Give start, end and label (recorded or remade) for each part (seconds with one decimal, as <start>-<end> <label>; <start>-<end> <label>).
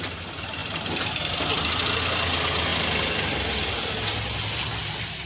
0.0-0.6 recorded; 0.6-2.0 remade; 2.0-5.3 recorded